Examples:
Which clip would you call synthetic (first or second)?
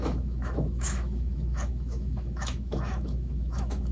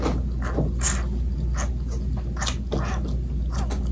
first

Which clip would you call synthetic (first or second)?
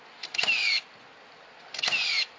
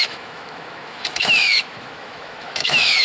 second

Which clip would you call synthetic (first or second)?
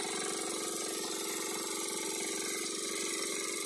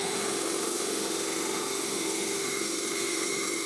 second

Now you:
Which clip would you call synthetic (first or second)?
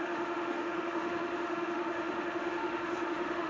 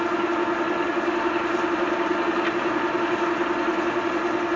first